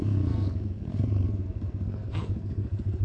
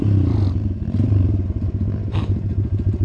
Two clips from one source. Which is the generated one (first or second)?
first